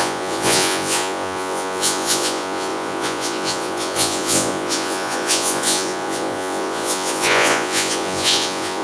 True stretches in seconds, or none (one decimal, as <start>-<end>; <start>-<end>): none

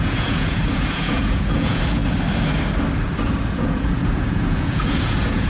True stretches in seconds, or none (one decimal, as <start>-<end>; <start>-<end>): 2.0-3.5

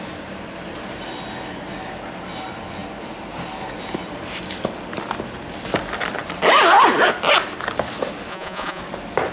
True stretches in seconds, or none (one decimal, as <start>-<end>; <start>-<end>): 0.0-8.3; 8.8-9.3

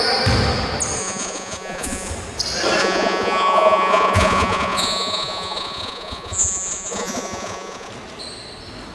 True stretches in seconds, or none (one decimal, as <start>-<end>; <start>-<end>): 0.0-1.0; 2.1-2.8; 7.9-8.9

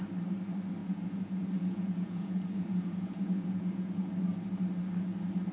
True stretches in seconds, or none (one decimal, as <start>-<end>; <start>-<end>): 0.0-0.8; 4.1-5.5

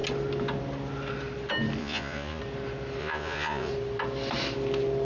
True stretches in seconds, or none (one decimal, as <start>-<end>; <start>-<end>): 0.0-1.8; 2.4-3.0; 3.7-5.0

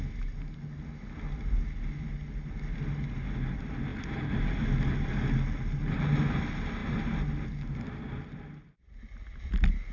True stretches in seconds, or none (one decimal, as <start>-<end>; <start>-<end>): 0.0-9.9